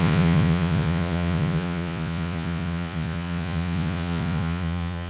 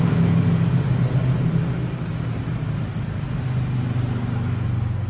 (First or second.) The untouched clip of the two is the second